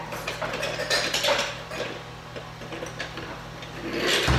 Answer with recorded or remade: recorded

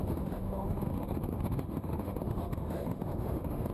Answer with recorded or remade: remade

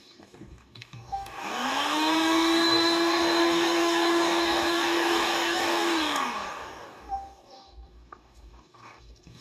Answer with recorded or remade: remade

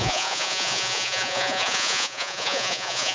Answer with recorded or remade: remade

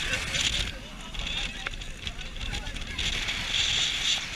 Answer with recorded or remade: recorded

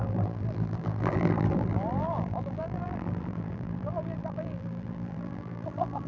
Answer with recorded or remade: remade